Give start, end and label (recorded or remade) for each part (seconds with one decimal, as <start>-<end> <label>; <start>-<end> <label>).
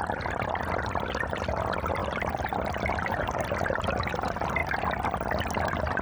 0.0-6.0 recorded